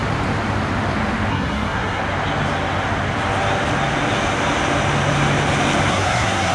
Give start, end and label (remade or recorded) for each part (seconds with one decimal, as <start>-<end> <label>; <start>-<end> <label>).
0.0-1.3 recorded; 1.3-2.0 remade; 2.0-5.9 recorded; 5.9-6.5 remade